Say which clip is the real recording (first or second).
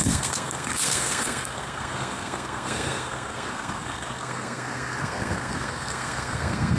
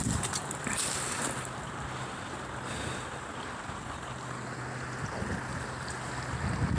second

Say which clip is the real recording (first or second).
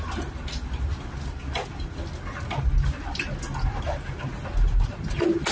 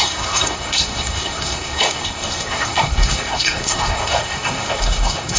first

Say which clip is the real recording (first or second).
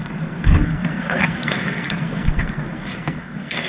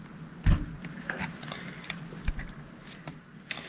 second